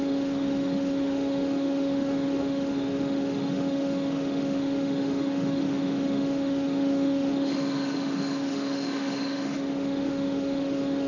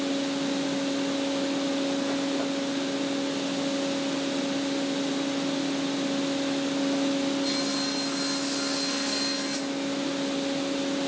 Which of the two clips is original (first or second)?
second